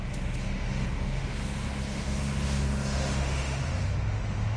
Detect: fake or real fake